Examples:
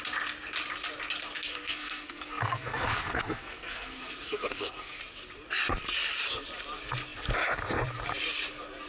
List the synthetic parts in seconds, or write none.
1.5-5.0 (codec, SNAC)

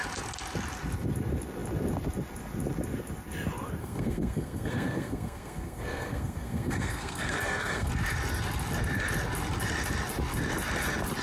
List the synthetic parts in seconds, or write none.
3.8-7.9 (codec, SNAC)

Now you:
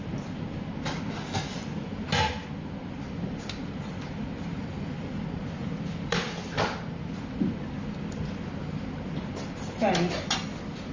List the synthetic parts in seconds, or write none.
none

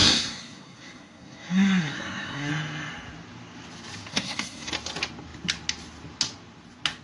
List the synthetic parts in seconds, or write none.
0.0-2.5 (codec, SNAC); 4.1-4.7